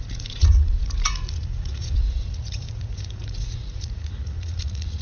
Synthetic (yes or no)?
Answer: yes